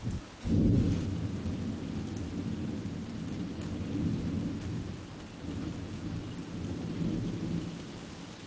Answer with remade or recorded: recorded